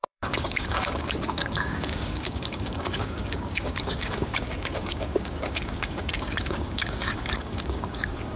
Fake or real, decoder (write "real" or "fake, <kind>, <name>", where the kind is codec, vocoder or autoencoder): fake, codec, DAC